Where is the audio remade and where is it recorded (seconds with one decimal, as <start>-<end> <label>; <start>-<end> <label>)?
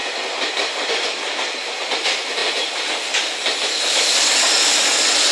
0.0-5.3 recorded